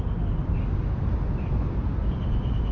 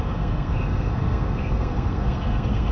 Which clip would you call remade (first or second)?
second